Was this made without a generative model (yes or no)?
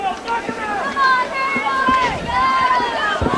no